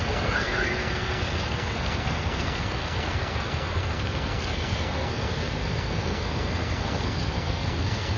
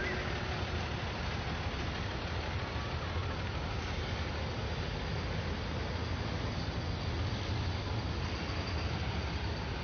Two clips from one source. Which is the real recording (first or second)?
second